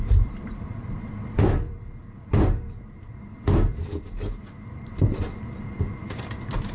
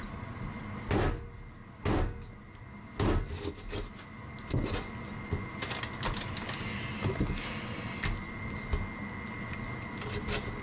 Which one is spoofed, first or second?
first